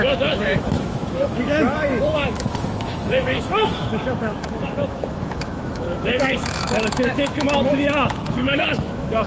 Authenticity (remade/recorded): remade